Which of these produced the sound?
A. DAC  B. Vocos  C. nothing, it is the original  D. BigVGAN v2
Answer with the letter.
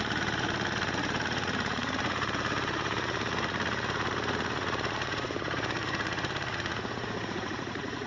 B